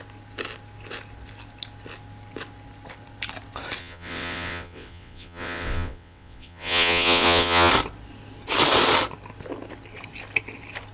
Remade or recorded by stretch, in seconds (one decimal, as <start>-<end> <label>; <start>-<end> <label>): 0.0-3.8 recorded; 3.8-7.7 remade; 7.7-10.9 recorded

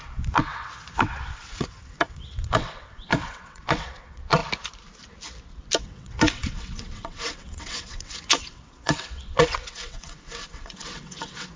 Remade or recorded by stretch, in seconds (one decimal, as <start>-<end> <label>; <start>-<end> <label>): 0.0-4.4 remade; 4.4-5.8 recorded; 5.8-11.6 remade

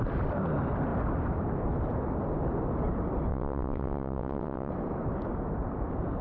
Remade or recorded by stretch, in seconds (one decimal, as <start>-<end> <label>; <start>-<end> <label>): 0.0-3.3 recorded; 3.3-4.7 remade; 4.7-6.2 recorded

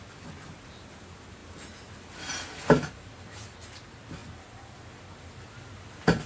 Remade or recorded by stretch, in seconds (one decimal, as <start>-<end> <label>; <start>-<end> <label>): 0.0-6.3 recorded

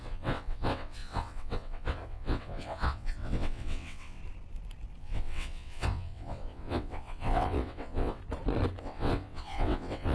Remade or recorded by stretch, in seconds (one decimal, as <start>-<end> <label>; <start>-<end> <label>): 0.0-4.2 remade; 4.2-5.0 recorded; 5.0-8.2 remade; 8.2-8.8 recorded; 8.8-10.1 remade

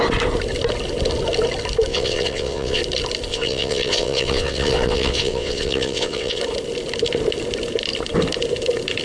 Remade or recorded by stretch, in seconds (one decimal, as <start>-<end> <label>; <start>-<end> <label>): 0.0-1.9 recorded; 1.9-2.8 remade; 2.8-3.3 recorded; 3.3-6.4 remade; 6.4-9.0 recorded

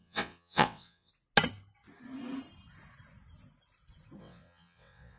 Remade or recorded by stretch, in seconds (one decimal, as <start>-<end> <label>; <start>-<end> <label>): 0.0-1.1 remade; 1.1-4.2 recorded; 4.2-5.2 remade

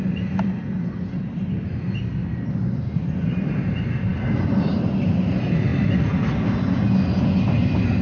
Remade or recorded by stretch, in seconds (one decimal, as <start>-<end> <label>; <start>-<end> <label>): 0.0-8.0 recorded